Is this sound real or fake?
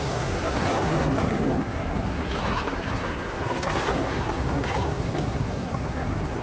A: fake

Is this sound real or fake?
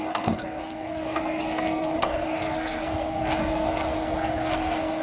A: fake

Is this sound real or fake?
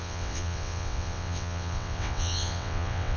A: fake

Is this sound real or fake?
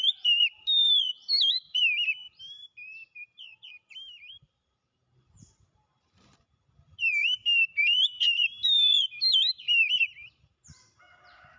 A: fake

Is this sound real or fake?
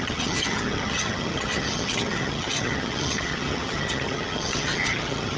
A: fake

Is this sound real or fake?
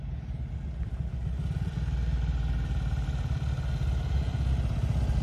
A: real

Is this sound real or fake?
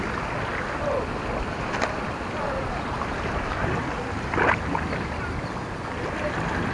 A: real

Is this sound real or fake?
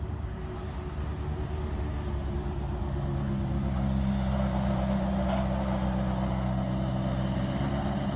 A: real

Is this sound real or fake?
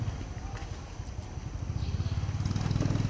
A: real